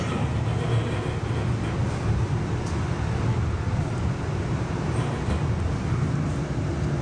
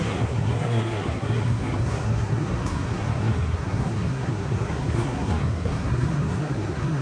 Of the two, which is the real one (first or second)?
first